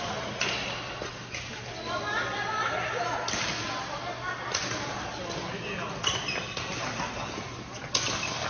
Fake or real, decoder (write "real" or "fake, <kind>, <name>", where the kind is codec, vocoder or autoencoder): real